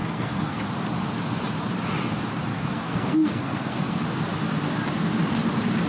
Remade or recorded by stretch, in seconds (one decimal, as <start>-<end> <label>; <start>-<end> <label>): 0.0-0.6 remade; 0.6-2.5 recorded; 2.5-4.0 remade; 4.0-5.9 recorded